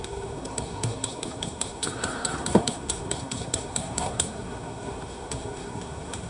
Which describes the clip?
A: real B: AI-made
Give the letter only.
B